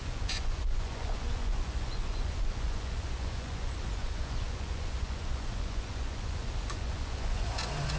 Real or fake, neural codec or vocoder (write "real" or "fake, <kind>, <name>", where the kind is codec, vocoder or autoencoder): fake, vocoder, Vocos